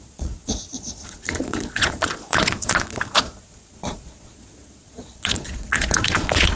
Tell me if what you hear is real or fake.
fake